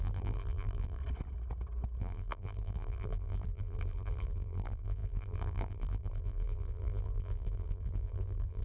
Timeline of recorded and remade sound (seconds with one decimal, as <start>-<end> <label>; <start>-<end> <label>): 0.0-1.0 remade; 1.0-2.0 recorded; 2.0-8.6 remade